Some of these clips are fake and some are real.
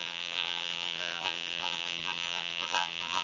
fake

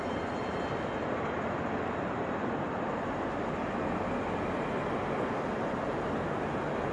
real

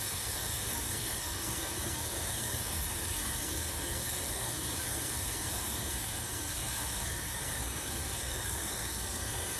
fake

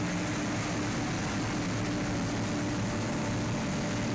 real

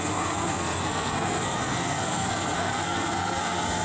fake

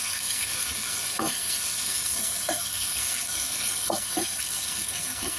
fake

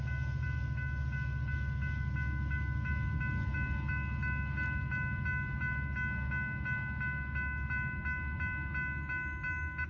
real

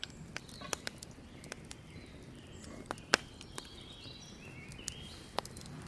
real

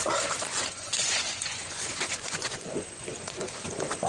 fake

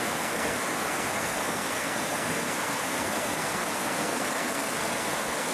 fake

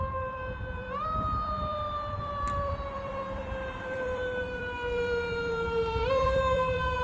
fake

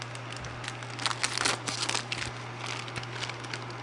real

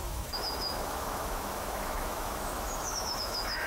fake